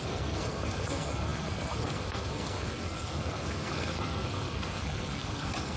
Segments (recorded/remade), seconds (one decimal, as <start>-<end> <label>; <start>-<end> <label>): 0.0-5.8 remade